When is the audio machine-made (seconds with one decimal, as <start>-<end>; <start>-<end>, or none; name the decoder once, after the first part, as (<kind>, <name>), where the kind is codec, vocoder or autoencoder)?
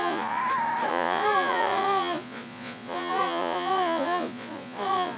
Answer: 0.0-0.4 (vocoder, Vocos); 0.9-5.2